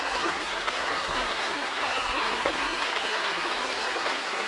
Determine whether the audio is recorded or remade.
remade